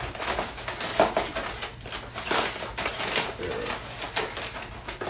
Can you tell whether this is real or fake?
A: real